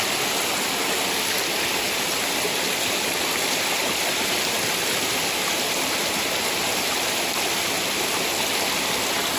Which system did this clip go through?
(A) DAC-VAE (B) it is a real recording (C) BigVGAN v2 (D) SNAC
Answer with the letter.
B